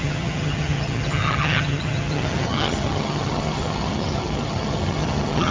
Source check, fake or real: fake